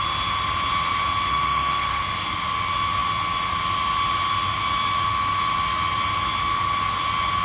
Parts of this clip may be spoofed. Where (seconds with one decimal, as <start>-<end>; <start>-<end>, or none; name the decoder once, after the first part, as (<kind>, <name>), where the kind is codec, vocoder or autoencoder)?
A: 1.3-2.0 (autoencoder, DAC-VAE)